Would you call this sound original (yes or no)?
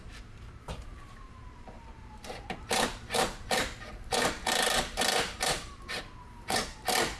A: no